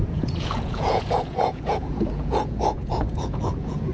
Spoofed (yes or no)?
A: yes